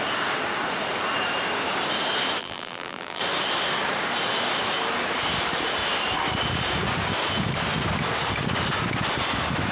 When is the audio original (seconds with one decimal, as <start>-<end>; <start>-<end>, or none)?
0.0-2.4; 3.2-9.7